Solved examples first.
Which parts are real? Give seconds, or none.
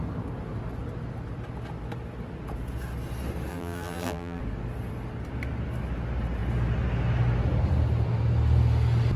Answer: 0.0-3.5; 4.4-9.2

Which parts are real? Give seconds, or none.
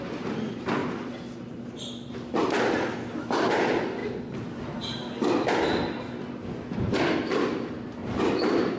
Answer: 0.8-3.4; 4.0-6.8; 8.0-8.8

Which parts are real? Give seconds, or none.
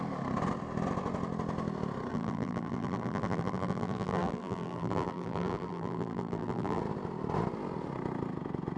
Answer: 0.0-2.1; 6.8-8.8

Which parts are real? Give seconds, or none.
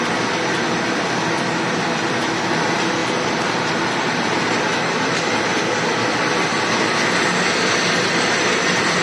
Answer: 0.0-3.0; 4.6-9.0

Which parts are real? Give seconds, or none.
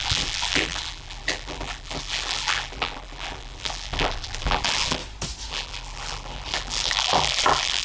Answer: 5.0-5.5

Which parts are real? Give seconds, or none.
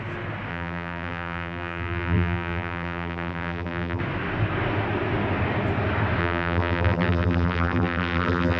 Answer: 0.0-0.5; 4.0-6.2